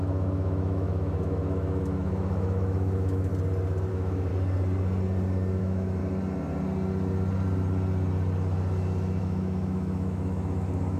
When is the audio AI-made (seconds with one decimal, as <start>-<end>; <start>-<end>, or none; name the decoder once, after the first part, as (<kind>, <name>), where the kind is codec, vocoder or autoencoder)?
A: 0.0-3.3 (autoencoder, DAC-VAE); 3.9-4.3; 5.6-6.0; 9.2-11.0